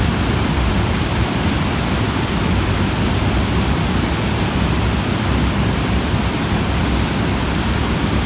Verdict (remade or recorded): remade